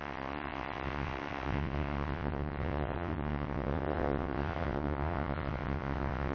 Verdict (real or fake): fake